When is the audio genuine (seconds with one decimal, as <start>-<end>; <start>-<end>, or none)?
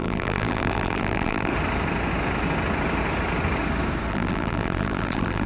1.5-4.1